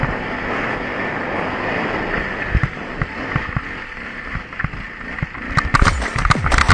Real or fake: real